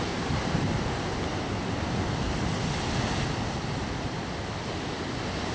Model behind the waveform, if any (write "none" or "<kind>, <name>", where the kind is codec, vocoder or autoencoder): none